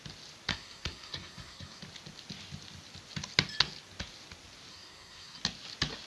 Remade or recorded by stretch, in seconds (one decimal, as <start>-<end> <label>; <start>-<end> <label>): 0.0-0.5 recorded; 0.5-1.8 remade; 1.8-4.7 recorded; 4.7-5.4 remade; 5.4-6.1 recorded